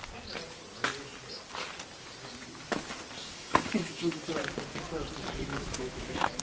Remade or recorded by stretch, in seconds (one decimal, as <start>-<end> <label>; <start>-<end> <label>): 0.0-3.2 recorded; 3.2-4.3 remade; 4.3-5.5 recorded; 5.5-6.4 remade